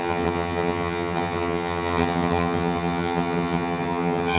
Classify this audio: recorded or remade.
remade